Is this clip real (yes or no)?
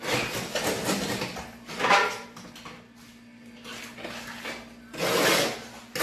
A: yes